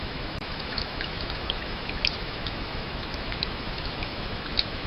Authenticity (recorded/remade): remade